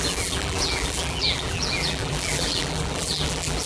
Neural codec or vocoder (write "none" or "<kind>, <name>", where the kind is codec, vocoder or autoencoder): vocoder, BigVGAN v2